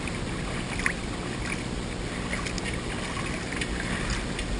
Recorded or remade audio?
recorded